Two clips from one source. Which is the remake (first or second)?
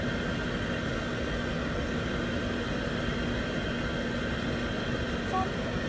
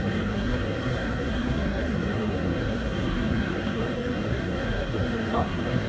second